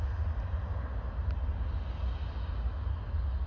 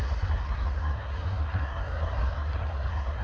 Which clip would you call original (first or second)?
first